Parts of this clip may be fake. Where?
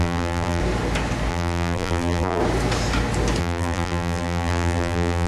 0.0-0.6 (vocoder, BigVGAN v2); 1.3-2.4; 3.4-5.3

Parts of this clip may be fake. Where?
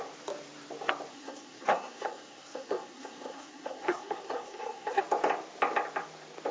1.1-5.0 (codec, SNAC)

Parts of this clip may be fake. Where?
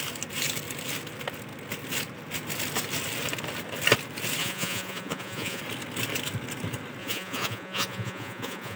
4.4-5.6 (vocoder, Vocos); 7.0-8.8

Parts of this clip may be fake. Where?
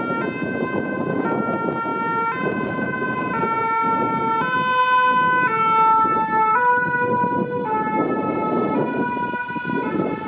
none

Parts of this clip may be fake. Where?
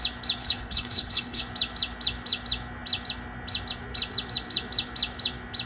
0.4-1.4 (codec, HILCodec)